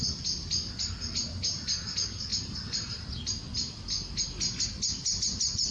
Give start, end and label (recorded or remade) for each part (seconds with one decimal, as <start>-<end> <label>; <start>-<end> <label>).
0.0-5.7 recorded